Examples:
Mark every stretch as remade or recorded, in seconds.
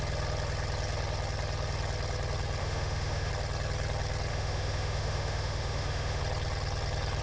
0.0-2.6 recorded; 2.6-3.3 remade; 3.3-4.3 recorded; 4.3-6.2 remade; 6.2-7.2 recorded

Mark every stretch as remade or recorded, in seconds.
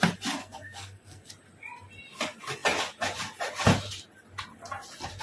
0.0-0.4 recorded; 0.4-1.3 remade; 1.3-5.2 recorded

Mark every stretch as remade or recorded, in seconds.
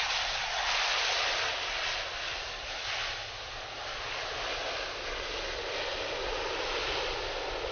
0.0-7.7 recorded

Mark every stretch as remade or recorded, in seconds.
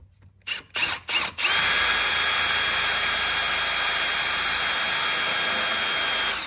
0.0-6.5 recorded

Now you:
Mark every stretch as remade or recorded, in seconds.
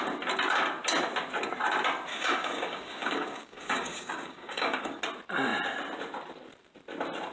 0.0-2.1 recorded; 2.1-5.0 remade; 5.0-7.3 recorded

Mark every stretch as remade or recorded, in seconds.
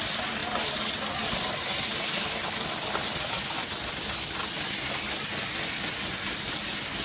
0.0-7.0 recorded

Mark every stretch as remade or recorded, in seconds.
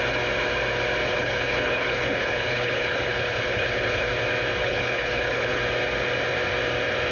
0.0-1.0 recorded; 1.0-4.1 remade; 4.1-4.6 recorded; 4.6-5.6 remade; 5.6-7.1 recorded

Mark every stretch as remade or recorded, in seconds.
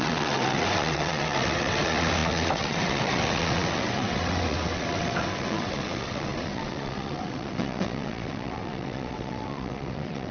0.0-10.3 remade